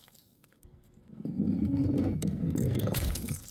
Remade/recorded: remade